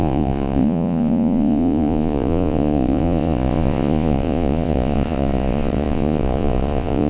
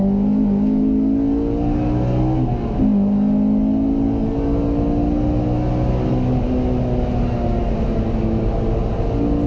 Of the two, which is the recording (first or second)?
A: second